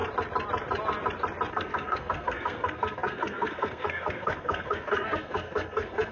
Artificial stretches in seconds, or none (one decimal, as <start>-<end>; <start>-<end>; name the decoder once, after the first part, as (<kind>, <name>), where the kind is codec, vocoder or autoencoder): 1.5-6.1 (codec, SNAC)